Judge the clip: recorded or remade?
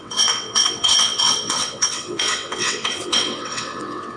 remade